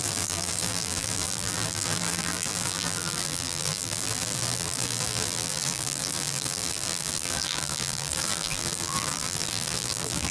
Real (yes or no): no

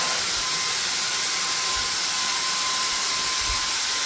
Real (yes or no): no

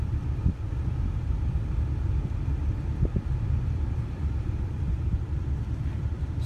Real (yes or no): no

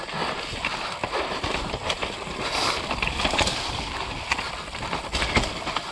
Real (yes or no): yes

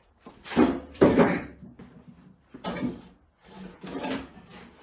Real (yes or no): no